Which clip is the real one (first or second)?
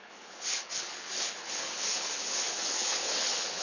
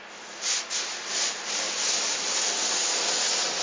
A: second